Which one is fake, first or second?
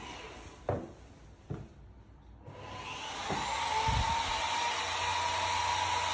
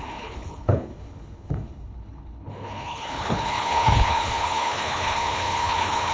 second